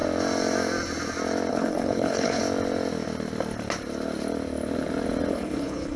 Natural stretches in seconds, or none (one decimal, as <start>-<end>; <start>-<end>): 0.0-1.5; 2.4-5.3